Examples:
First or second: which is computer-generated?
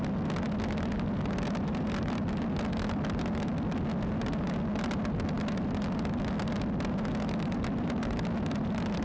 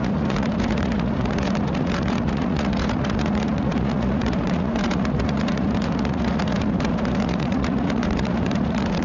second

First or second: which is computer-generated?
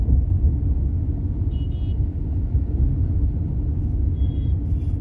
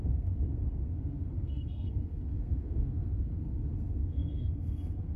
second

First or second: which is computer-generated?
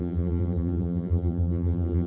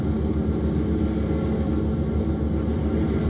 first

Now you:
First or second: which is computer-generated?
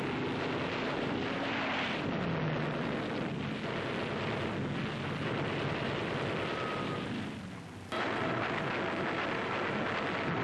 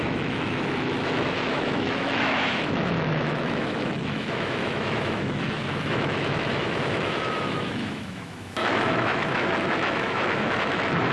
second